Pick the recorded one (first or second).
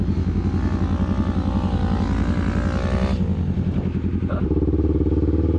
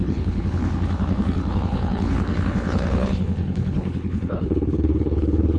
first